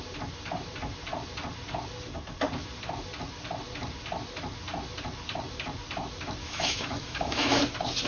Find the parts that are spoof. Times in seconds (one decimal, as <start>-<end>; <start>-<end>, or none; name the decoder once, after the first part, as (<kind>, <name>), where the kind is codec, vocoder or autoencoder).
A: 6.4-7.6 (autoencoder, DAC-VAE)